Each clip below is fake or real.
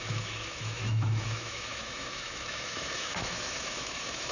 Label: fake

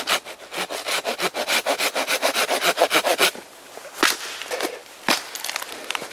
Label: real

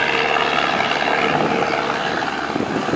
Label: real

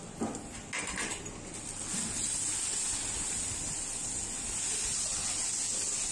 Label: real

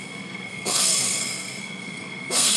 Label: fake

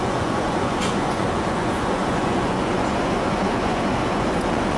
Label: fake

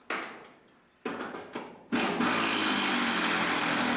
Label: real